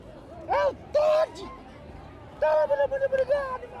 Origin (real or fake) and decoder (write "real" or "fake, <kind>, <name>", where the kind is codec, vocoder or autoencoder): real